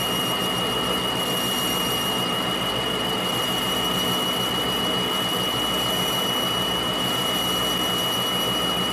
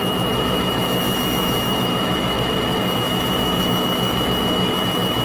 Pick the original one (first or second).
first